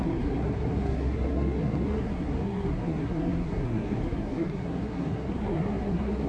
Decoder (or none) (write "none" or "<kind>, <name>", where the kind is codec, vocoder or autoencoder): codec, SNAC